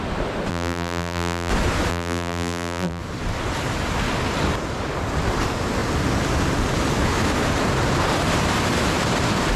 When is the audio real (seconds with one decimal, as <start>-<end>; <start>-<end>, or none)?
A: 0.0-0.5; 1.5-1.9; 3.0-9.6